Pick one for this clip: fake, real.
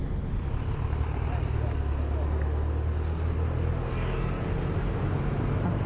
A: real